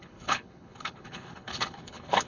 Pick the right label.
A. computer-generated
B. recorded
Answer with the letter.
A